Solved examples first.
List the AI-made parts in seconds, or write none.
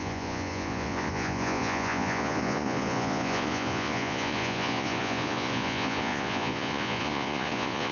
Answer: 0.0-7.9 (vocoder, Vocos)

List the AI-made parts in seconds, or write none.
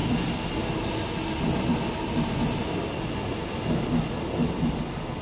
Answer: none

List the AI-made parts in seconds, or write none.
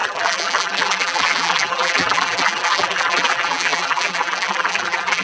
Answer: 0.0-5.2 (vocoder, BigVGAN v2)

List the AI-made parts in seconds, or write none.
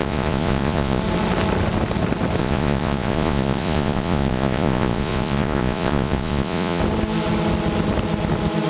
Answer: 0.0-1.0 (vocoder, Vocos); 2.4-6.8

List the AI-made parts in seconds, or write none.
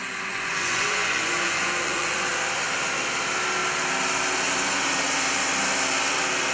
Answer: 0.0-2.3 (vocoder, Vocos)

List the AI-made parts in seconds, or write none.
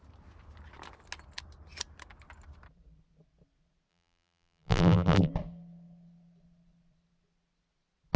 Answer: 3.9-5.3 (vocoder, BigVGAN v2)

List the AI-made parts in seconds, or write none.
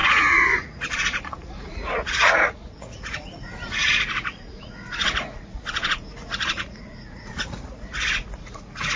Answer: 0.0-9.0 (vocoder, Vocos)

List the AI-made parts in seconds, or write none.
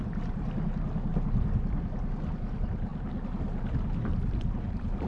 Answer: none